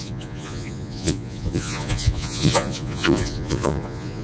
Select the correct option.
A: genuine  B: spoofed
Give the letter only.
B